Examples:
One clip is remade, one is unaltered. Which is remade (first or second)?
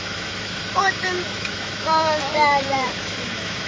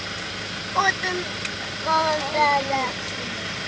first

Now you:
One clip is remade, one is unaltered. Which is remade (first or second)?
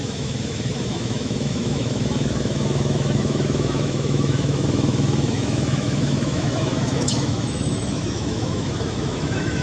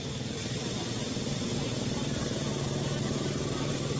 first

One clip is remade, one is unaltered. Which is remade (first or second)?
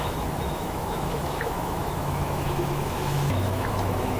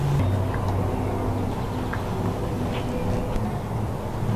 first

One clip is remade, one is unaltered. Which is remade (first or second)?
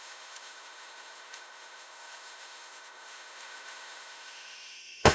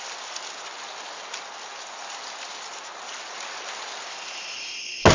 first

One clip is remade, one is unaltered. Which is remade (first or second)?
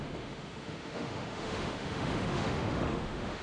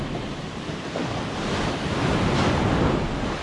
first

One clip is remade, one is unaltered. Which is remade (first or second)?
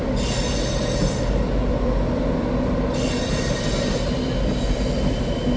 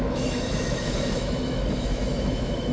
second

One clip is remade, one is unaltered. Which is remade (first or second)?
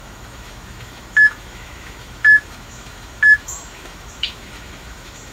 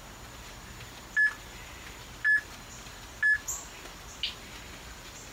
first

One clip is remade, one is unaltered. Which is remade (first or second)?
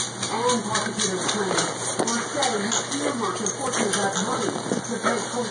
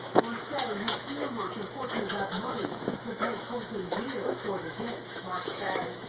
second